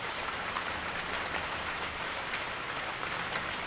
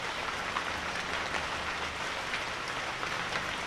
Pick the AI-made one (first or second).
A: first